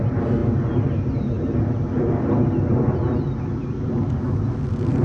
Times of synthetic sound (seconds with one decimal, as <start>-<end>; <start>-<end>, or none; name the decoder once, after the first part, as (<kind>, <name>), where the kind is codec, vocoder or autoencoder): none